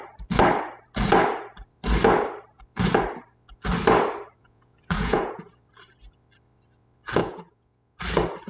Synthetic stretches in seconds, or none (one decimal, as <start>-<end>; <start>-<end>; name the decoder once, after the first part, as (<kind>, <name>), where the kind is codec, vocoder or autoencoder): 4.4-5.6 (vocoder, Vocos); 7.2-8.0